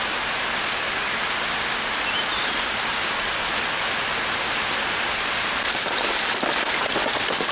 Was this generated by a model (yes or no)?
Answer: no